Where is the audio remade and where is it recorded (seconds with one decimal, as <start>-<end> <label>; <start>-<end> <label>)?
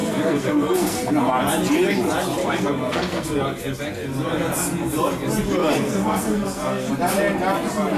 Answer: 0.0-1.1 remade; 1.1-2.4 recorded; 2.4-3.4 remade; 3.4-5.6 recorded; 5.6-6.9 remade; 6.9-8.0 recorded